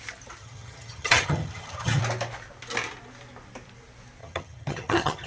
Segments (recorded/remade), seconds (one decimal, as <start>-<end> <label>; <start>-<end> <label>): 0.0-0.4 recorded; 0.4-2.0 remade; 2.0-4.2 recorded; 4.2-5.3 remade